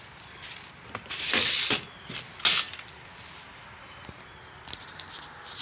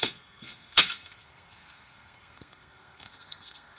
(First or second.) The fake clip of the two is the second